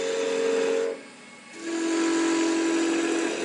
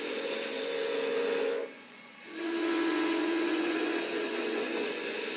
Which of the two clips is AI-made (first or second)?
second